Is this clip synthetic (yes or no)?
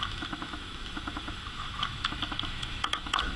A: yes